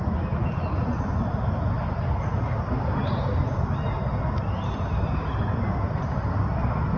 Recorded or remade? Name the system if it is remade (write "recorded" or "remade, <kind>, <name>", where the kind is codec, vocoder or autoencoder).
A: recorded